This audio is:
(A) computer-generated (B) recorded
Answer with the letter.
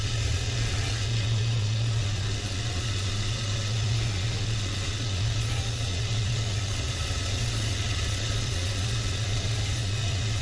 A